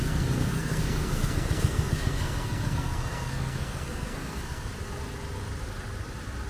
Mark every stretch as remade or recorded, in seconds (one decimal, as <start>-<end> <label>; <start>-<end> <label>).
0.0-4.7 remade; 4.7-6.5 recorded